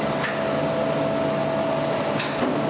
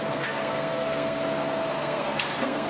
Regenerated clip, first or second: second